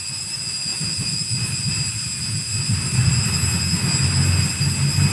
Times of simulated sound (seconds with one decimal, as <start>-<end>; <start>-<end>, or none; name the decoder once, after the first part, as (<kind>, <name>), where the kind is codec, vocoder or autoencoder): none